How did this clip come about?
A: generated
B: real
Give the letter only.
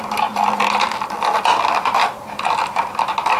B